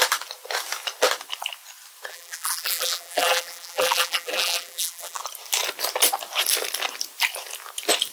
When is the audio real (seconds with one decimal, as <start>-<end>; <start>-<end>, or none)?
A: 0.0-2.1; 5.2-8.1